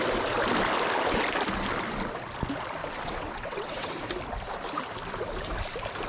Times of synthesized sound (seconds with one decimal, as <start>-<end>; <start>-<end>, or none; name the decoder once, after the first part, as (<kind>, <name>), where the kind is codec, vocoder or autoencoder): 2.8-3.9 (vocoder, WaveNeXt)